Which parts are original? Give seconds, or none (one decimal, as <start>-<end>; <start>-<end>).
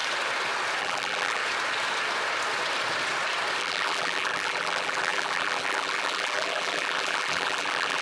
0.0-0.8; 1.4-3.6